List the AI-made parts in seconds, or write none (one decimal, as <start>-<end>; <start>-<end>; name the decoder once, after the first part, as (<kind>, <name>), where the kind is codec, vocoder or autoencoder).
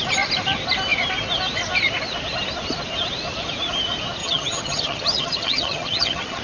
4.2-6.4 (vocoder, HiFi-GAN)